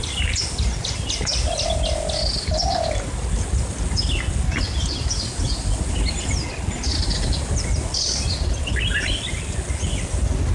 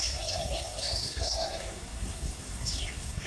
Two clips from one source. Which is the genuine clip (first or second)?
first